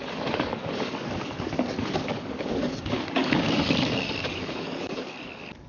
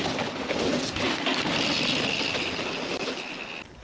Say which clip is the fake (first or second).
first